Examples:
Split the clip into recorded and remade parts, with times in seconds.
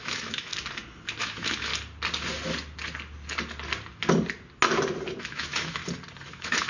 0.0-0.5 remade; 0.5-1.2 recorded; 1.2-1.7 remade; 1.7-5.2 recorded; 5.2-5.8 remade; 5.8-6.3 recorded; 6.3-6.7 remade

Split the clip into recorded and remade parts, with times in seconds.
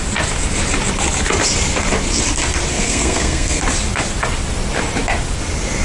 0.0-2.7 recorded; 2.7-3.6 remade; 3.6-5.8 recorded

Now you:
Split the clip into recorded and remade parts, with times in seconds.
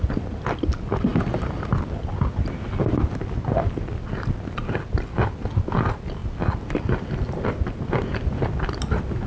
0.0-1.1 recorded; 1.1-1.8 remade; 1.8-9.3 recorded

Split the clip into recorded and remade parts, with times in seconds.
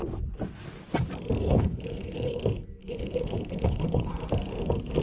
0.0-1.4 recorded; 1.4-2.4 remade; 2.4-2.8 recorded; 2.8-4.1 remade; 4.1-5.0 recorded